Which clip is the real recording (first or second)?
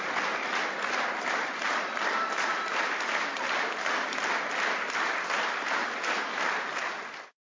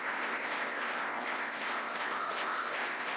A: first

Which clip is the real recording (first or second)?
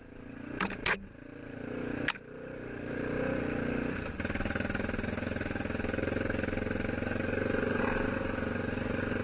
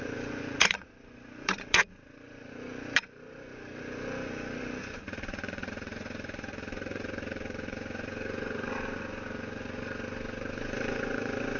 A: first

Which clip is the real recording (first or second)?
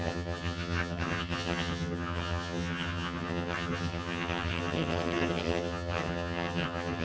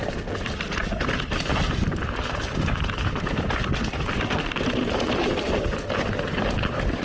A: second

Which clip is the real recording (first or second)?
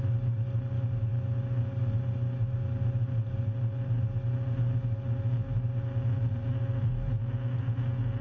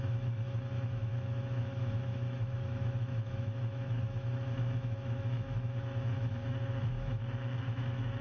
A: first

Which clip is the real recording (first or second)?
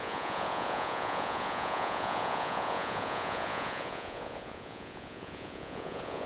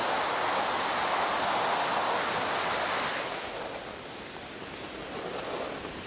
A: second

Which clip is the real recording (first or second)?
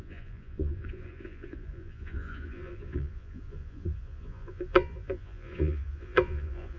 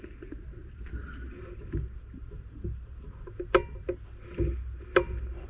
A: second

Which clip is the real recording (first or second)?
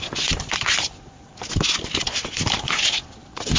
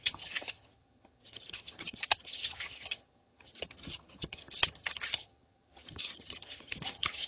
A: first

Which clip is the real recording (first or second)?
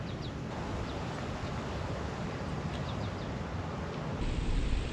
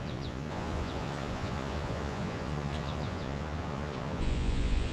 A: first